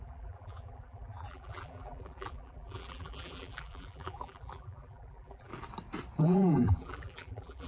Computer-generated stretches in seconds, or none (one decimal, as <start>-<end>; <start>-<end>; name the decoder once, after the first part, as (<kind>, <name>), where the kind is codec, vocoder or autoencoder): 0.0-5.5 (vocoder, BigVGAN v2); 6.2-7.7